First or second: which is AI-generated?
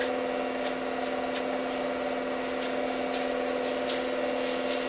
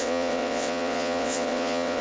second